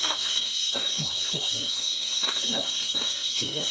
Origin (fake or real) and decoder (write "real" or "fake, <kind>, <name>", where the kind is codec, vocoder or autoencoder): fake, codec, SNAC